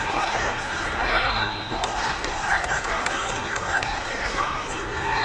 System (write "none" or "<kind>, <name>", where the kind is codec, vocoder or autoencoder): codec, SNAC